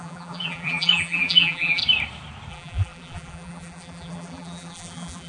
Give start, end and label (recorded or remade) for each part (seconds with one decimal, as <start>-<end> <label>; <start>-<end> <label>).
0.0-1.8 remade; 1.8-2.5 recorded; 2.5-5.3 remade